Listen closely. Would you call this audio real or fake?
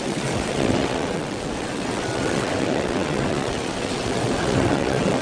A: fake